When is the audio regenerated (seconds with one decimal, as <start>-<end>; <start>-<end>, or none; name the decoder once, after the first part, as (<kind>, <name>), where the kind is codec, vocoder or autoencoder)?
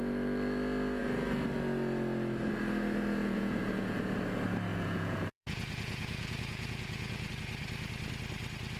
3.2-4.0 (vocoder, Vocos); 4.7-7.3